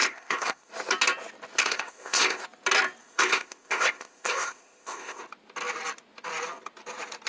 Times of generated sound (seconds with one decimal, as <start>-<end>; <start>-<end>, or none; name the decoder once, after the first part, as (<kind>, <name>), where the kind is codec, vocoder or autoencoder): 0.0-0.7 (codec, ZipCodec); 1.6-2.4; 3.0-5.2